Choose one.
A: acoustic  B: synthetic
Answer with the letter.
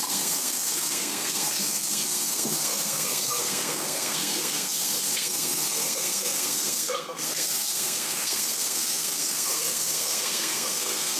B